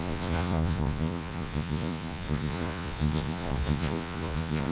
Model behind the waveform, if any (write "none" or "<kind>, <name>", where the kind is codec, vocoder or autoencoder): vocoder, Vocos